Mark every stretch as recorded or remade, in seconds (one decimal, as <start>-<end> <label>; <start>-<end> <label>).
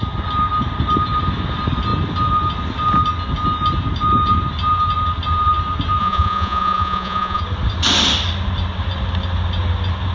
0.0-6.0 recorded; 6.0-7.4 remade; 7.4-10.1 recorded